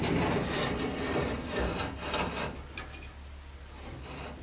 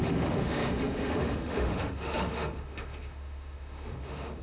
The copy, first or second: second